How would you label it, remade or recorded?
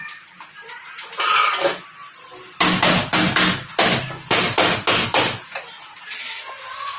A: recorded